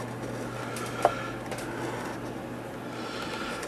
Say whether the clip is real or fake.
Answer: real